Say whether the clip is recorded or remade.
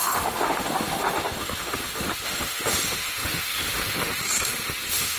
remade